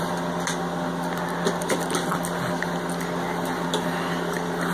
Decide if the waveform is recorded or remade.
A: recorded